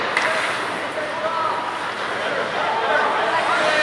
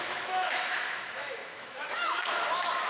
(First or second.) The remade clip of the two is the second